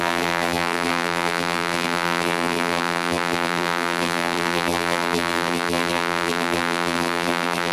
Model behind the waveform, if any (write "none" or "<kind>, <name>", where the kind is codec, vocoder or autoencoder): vocoder, BigVGAN v2